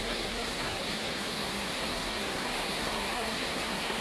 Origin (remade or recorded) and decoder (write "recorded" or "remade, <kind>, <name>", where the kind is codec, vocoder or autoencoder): remade, codec, SNAC